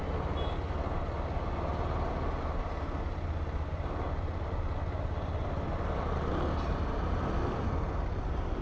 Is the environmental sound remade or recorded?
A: recorded